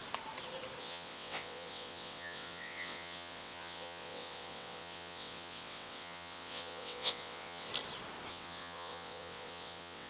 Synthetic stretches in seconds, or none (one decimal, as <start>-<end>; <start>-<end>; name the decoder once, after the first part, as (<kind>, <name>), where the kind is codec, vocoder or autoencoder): 0.8-7.7 (vocoder, WaveNeXt); 8.3-10.1